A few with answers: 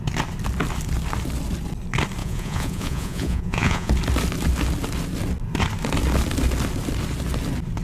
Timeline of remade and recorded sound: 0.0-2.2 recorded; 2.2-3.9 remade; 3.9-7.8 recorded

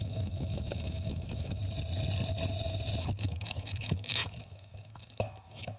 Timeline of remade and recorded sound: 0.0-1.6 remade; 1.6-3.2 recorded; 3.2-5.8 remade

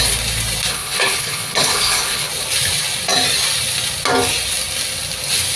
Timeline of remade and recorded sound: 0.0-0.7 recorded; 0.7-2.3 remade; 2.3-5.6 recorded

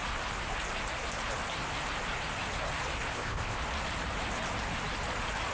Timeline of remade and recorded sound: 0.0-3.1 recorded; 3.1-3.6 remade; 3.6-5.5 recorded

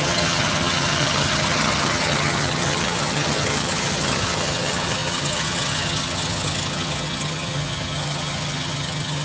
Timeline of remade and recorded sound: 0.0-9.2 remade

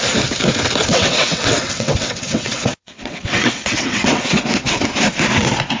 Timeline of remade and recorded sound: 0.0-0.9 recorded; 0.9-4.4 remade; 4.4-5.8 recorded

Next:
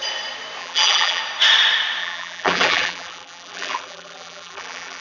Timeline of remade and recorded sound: 0.0-0.6 recorded; 0.6-1.2 remade; 1.2-2.0 recorded; 2.0-5.0 remade

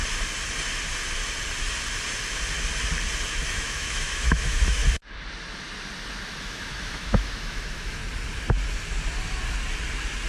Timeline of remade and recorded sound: 0.0-3.4 recorded; 3.4-4.8 remade; 4.8-6.4 recorded; 6.4-8.0 remade; 8.0-10.3 recorded